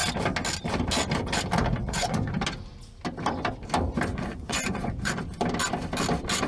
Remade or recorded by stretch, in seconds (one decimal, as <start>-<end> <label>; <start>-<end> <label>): 0.0-1.8 recorded; 1.8-2.3 remade; 2.3-4.1 recorded; 4.1-5.2 remade; 5.2-6.5 recorded